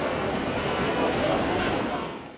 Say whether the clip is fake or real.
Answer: fake